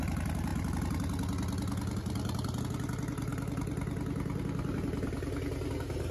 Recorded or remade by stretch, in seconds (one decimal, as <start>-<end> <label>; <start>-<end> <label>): 0.0-6.1 recorded